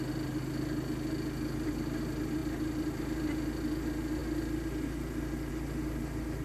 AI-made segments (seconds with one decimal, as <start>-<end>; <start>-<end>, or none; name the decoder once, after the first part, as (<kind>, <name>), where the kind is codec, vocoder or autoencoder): none